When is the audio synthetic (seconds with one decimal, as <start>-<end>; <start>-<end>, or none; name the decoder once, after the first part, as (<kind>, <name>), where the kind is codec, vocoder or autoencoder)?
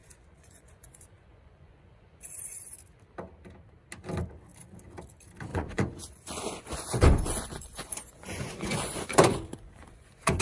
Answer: 0.0-2.7 (vocoder, Vocos); 5.5-10.4